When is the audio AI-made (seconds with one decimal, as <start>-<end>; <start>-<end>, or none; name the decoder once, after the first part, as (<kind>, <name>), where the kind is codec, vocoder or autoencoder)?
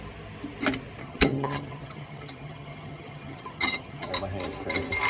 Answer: 1.0-4.1 (vocoder, HiFi-GAN)